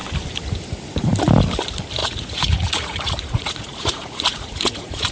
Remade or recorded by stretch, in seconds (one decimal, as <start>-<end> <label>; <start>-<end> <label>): 0.0-2.0 recorded; 2.0-5.1 remade